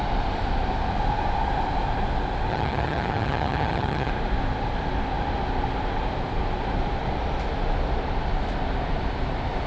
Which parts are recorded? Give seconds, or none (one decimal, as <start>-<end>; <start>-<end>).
0.0-2.5; 4.1-9.7